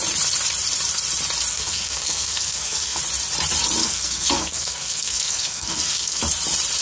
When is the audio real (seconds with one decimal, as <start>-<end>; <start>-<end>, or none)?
0.0-1.5; 3.0-3.8; 6.2-6.8